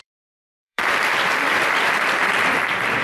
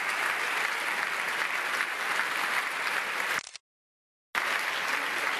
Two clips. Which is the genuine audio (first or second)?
second